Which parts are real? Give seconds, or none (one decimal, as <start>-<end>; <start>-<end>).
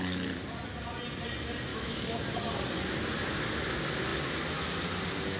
0.0-1.7; 2.2-5.4